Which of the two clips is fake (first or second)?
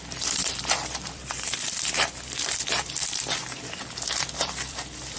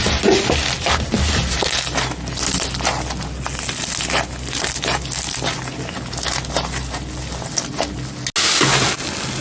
first